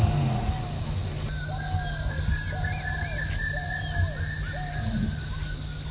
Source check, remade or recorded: recorded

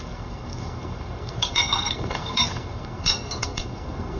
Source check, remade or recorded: remade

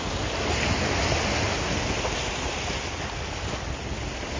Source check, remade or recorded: recorded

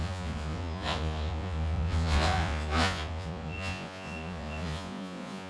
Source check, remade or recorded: remade